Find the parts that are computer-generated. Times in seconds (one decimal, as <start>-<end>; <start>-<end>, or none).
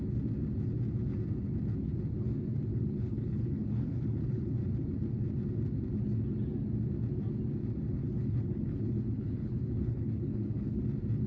2.7-4.5; 8.0-10.8